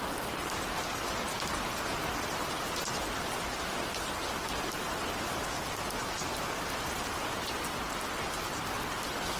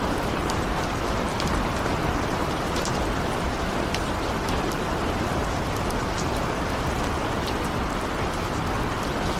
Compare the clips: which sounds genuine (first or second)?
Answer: first